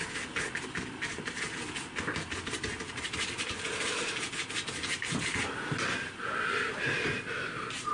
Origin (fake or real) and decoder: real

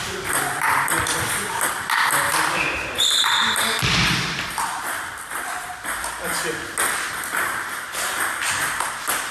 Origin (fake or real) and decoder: fake, vocoder, BigVGAN v2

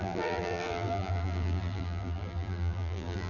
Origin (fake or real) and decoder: fake, vocoder, BigVGAN v2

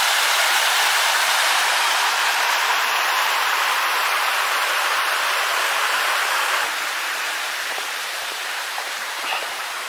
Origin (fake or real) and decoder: fake, vocoder, BigVGAN v2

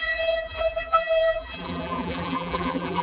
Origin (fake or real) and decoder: fake, vocoder, BigVGAN v2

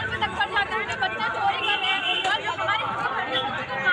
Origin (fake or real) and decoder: real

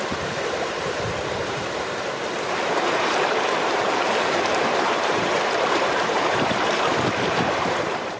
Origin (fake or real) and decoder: fake, vocoder, BigVGAN v2